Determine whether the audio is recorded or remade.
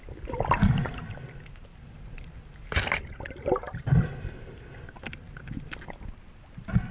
recorded